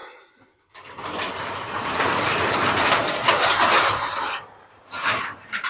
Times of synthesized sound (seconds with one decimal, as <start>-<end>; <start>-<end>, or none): 1.2-3.0; 4.2-5.7